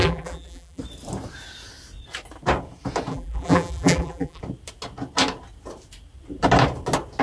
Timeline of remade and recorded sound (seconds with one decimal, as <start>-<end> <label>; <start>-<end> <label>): 0.0-0.8 remade; 0.8-3.1 recorded; 3.1-4.4 remade; 4.4-7.2 recorded